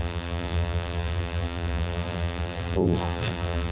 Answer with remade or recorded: remade